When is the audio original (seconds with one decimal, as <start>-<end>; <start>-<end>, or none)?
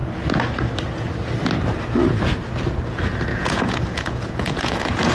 0.0-3.3